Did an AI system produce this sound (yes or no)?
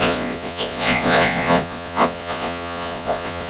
yes